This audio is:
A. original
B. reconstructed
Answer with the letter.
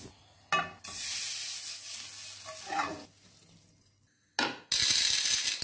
A